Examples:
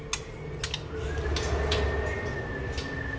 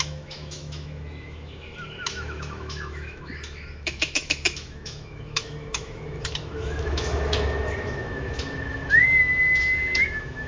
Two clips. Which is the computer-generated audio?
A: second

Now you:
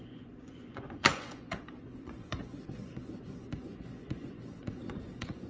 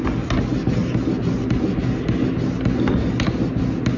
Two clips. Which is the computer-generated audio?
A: first